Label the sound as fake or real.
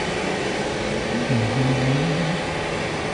real